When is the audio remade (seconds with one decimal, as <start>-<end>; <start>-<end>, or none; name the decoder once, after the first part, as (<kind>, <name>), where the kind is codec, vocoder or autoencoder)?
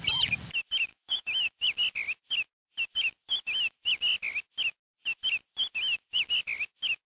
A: 0.9-1.5 (autoencoder, DAC-VAE)